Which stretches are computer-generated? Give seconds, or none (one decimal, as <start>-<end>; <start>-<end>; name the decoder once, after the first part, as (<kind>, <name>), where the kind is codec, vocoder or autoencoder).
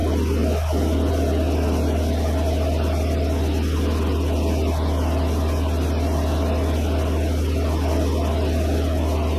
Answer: none